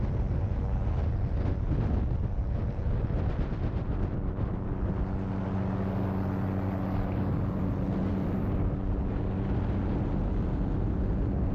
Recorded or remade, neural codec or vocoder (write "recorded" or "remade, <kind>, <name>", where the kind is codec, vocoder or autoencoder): recorded